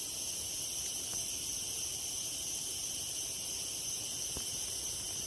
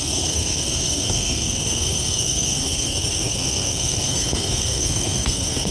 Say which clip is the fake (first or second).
second